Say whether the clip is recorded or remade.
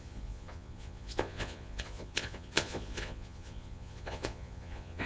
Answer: remade